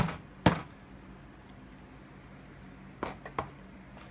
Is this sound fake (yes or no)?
no